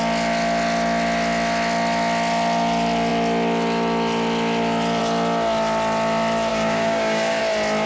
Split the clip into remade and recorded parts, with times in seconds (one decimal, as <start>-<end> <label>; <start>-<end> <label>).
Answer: 0.0-6.5 recorded; 6.5-7.4 remade; 7.4-7.9 recorded